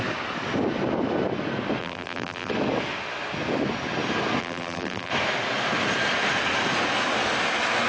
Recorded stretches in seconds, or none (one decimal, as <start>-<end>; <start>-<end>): 0.0-1.8; 2.5-4.4; 5.1-7.9